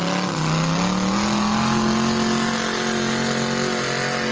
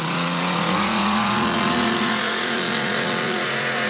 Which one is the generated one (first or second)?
second